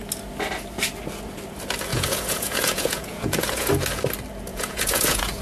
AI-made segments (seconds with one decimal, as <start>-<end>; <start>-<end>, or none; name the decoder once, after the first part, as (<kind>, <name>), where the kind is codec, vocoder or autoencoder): 1.9-3.7 (vocoder, Vocos); 4.5-5.4